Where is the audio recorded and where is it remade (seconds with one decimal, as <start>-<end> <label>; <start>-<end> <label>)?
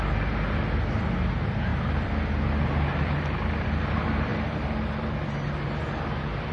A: 0.0-1.7 recorded; 1.7-2.3 remade; 2.3-2.9 recorded; 2.9-3.9 remade; 3.9-4.3 recorded; 4.3-5.5 remade; 5.5-6.5 recorded